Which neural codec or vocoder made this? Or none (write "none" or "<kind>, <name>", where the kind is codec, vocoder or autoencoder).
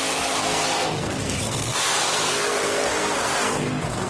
codec, SNAC